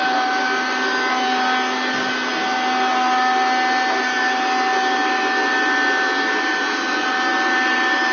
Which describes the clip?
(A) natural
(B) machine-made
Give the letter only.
A